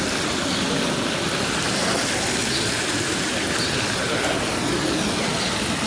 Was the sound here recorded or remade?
recorded